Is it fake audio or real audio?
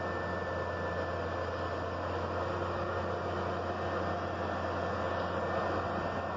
real